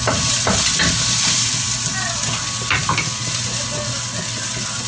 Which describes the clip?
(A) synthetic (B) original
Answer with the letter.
B